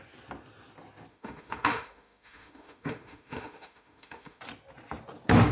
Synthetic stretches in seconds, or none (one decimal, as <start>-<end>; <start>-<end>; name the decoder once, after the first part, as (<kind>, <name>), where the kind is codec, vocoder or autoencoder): 1.1-4.4 (autoencoder, DAC-VAE)